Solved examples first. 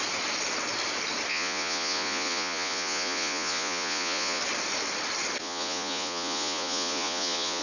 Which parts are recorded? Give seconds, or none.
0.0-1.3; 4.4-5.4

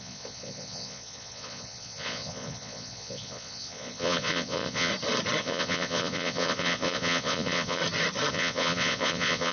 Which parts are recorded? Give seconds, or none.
4.9-5.4; 7.8-8.3